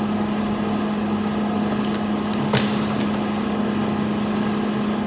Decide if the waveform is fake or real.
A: real